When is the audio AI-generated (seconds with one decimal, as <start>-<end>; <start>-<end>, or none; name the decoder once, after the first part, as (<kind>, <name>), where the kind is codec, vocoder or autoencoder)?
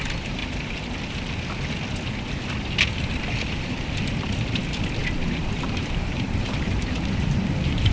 0.0-0.4 (vocoder, BigVGAN v2); 3.1-4.6; 5.4-7.9